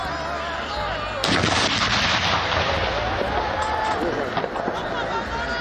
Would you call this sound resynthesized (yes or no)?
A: no